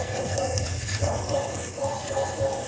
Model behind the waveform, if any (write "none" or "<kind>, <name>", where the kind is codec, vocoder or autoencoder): codec, SNAC